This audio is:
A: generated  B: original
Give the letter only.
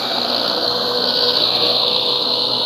A